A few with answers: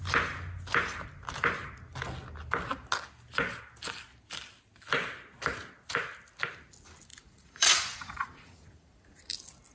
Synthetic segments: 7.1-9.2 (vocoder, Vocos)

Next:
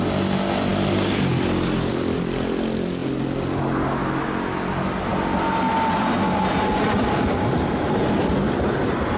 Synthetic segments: none

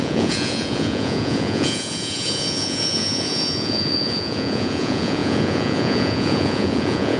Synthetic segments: 0.0-7.2 (vocoder, Vocos)

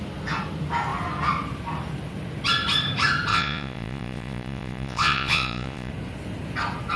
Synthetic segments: 3.3-5.9 (vocoder, Vocos)

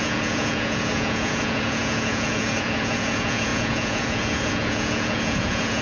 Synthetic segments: 0.0-5.8 (vocoder, Vocos)

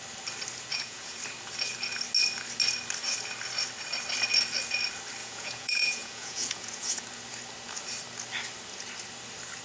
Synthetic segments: 0.7-1.2 (vocoder, Vocos); 5.2-7.0

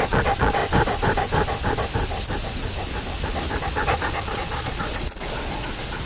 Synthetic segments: 0.0-0.6 (vocoder, Vocos); 4.3-6.1

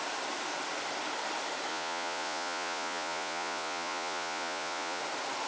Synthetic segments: 1.7-5.0 (vocoder, Vocos)